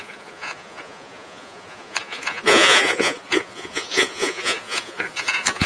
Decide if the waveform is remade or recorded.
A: remade